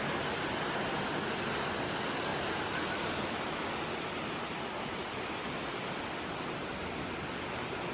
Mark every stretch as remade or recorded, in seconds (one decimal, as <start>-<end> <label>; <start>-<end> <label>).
0.0-7.9 recorded

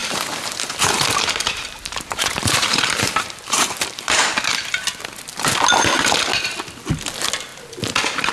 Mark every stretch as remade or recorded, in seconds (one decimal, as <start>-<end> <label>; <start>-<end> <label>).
0.0-4.2 remade; 4.2-8.3 recorded

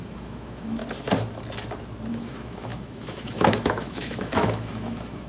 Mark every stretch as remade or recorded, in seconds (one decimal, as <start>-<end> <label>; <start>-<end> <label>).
0.0-0.8 remade; 0.8-2.1 recorded; 2.1-5.3 remade

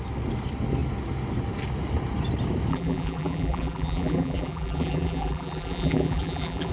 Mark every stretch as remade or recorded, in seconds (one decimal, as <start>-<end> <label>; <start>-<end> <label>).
0.0-2.7 recorded; 2.7-6.7 remade